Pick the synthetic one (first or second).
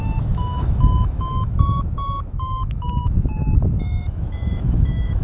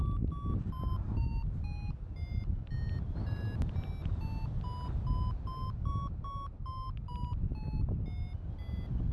first